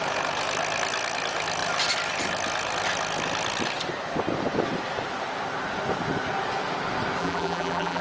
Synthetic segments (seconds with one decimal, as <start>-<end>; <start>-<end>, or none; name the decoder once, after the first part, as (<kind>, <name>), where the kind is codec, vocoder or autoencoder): 7.2-8.0 (vocoder, BigVGAN v2)